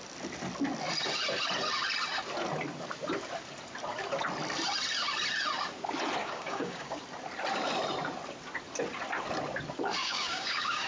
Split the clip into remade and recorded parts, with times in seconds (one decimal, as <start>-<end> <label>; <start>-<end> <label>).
0.0-6.2 recorded; 6.2-7.0 remade; 7.0-10.0 recorded; 10.0-10.9 remade